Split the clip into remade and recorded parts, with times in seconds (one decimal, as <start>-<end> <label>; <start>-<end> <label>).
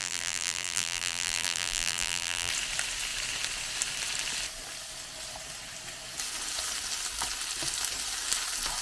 0.0-2.5 remade; 2.5-8.8 recorded